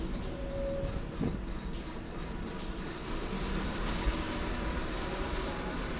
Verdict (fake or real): real